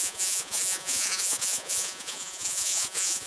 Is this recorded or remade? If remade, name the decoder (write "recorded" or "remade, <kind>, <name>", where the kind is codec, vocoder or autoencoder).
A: remade, vocoder, Vocos